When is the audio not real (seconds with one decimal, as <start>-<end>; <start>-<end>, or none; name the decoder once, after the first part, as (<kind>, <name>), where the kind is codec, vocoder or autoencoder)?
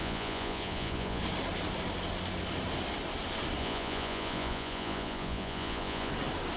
0.0-1.2 (vocoder, Vocos); 3.6-6.1